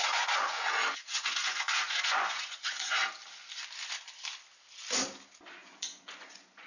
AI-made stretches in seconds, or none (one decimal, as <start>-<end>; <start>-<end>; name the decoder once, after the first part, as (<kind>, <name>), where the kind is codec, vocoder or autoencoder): 0.0-3.0 (vocoder, Vocos); 5.4-6.7